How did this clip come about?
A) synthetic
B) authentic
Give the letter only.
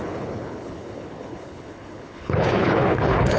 A